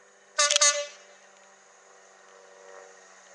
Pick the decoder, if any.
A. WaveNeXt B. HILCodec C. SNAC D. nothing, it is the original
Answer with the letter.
D